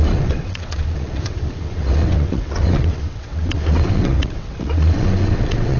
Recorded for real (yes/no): no